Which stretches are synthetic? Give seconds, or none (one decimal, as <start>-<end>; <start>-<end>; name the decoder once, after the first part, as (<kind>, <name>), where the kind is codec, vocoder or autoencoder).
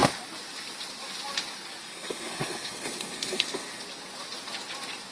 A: 1.8-3.8 (codec, SNAC)